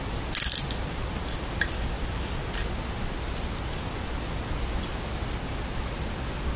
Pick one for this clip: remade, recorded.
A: recorded